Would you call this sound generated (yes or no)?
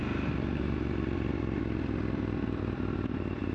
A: no